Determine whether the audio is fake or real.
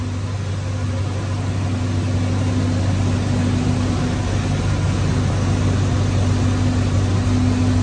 real